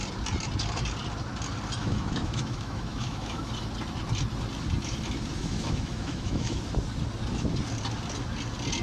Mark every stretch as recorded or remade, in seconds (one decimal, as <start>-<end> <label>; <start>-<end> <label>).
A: 0.0-1.8 recorded; 1.8-3.5 remade; 3.5-5.4 recorded; 5.4-6.6 remade; 6.6-8.8 recorded